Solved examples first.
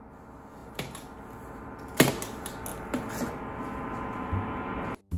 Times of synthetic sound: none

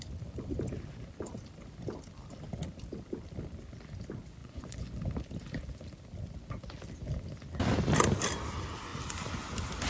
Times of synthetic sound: 4.4-5.0 (vocoder, Vocos)

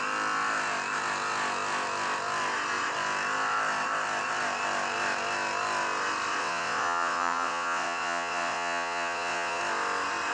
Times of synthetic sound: 6.4-9.6 (vocoder, WaveNeXt)

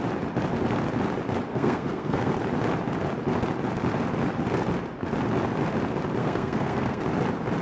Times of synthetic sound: 1.5-2.3 (codec, SNAC); 6.2-7.0

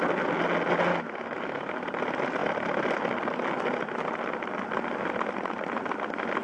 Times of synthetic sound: 0.9-1.7 (autoencoder, DAC-VAE)

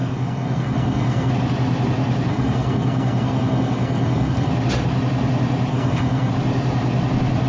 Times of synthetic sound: 0.0-1.3 (codec, SNAC); 2.3-4.5; 5.7-6.3

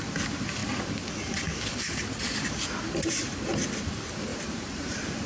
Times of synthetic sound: 4.3-5.3 (vocoder, BigVGAN v2)